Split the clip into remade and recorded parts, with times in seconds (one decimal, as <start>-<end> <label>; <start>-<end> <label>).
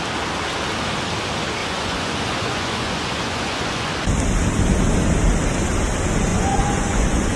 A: 0.0-1.6 recorded; 1.6-3.9 remade; 3.9-6.3 recorded; 6.3-7.4 remade